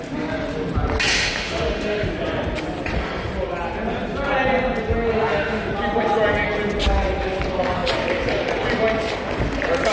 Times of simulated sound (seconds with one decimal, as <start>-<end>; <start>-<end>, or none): 1.1-2.1; 5.1-5.7